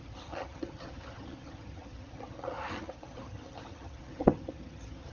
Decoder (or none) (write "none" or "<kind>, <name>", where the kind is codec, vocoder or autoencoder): vocoder, HiFi-GAN